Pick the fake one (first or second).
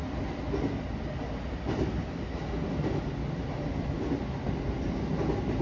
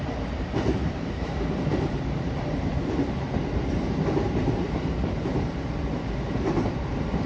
second